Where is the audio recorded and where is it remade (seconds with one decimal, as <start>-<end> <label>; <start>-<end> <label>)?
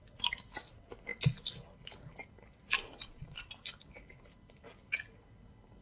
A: 0.0-5.8 recorded